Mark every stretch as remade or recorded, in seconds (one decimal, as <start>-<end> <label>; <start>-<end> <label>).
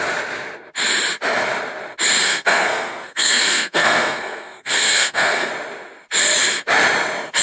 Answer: 0.0-2.2 recorded; 2.2-5.5 remade; 5.5-7.4 recorded